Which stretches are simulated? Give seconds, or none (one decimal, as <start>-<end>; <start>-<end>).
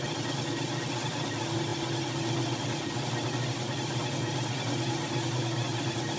none